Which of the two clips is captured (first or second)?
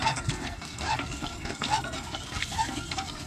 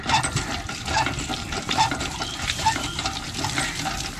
second